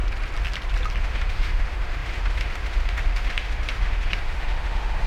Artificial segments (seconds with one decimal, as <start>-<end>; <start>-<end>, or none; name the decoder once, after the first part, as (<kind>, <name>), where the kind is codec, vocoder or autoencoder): 1.0-5.1 (autoencoder, DAC-VAE)